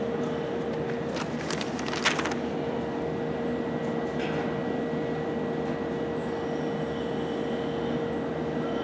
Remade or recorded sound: recorded